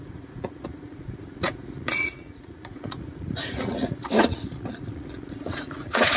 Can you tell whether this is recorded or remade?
remade